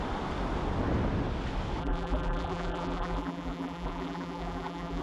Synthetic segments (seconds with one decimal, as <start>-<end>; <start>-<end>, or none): 1.8-5.0

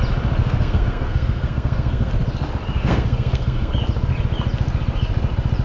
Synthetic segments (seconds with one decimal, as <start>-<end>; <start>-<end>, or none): 0.4-2.1; 2.8-3.7